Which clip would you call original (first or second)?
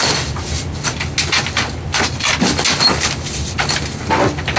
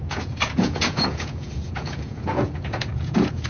first